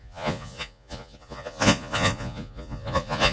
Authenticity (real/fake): fake